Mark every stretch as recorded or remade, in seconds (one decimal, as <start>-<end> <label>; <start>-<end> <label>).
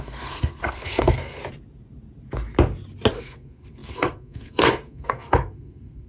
0.0-1.4 remade; 1.4-3.1 recorded; 3.1-6.1 remade